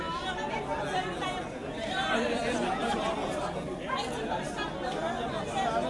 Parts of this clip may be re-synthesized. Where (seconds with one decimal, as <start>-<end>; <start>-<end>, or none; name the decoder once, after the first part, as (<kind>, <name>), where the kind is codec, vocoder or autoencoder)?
1.6-2.4 (vocoder, BigVGAN v2); 2.8-3.9